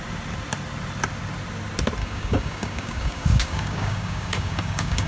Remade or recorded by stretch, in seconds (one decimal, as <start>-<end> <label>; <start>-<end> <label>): 0.0-2.0 recorded; 2.0-5.1 remade